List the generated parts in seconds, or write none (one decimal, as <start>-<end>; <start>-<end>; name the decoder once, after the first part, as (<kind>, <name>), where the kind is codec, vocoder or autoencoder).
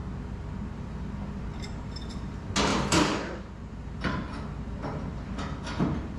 none